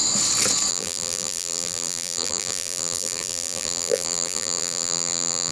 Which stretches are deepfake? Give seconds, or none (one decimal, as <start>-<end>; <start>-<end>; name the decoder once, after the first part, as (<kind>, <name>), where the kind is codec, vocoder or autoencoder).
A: 0.7-5.5 (vocoder, BigVGAN v2)

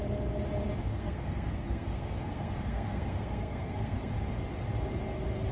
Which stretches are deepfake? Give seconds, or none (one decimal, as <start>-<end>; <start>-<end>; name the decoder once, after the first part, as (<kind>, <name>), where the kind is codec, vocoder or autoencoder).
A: 0.9-4.1 (codec, SNAC)

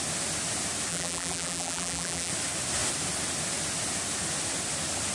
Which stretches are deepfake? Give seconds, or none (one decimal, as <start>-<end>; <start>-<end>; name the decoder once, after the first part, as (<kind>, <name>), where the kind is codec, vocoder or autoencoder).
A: 0.9-2.3 (vocoder, BigVGAN v2)

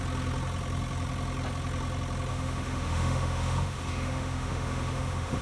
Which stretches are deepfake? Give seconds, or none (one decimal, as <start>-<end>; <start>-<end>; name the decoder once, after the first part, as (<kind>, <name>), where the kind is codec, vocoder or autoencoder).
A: 2.3-5.4 (autoencoder, DAC-VAE)

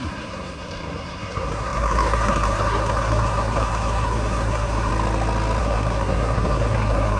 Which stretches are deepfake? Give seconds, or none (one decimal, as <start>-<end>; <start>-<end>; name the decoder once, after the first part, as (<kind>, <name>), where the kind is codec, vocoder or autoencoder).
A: 0.0-4.9 (codec, SNAC); 5.6-7.2

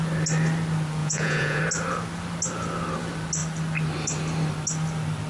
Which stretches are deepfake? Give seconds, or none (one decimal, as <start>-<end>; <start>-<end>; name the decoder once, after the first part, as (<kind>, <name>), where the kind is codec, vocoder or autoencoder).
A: 1.0-1.6 (vocoder, Vocos)